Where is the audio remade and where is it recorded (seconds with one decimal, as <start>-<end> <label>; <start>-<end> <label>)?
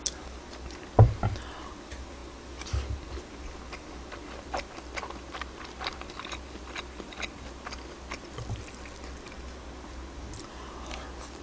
0.0-11.4 recorded